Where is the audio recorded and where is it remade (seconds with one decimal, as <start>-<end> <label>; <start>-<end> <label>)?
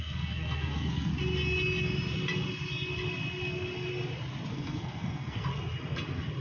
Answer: 0.0-1.1 remade; 1.1-4.5 recorded; 4.5-5.5 remade; 5.5-6.4 recorded